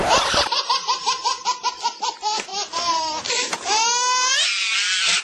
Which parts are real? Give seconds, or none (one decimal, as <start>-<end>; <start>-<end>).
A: 0.0-5.2